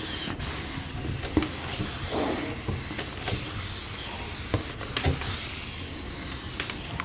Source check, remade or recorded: recorded